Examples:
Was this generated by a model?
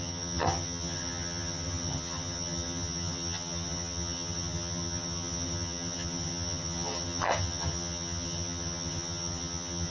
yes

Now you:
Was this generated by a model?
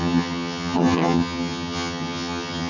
yes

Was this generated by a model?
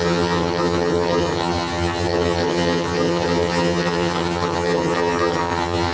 yes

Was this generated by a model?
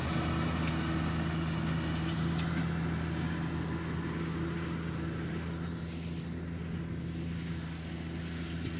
no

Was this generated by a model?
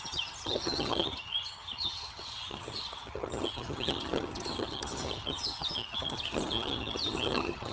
yes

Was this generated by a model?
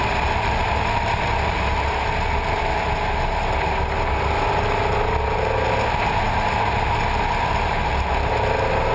no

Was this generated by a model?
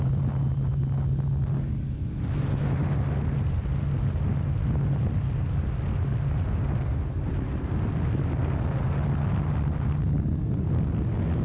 no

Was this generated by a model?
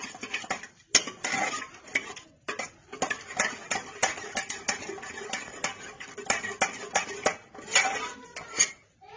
no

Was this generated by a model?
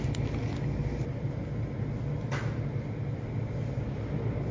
no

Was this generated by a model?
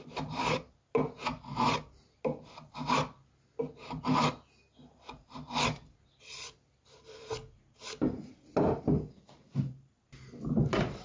no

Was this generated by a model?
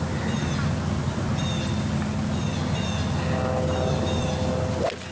no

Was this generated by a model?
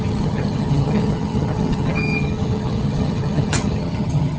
yes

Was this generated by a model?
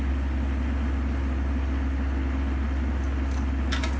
no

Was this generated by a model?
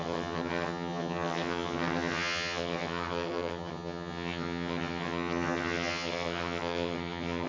yes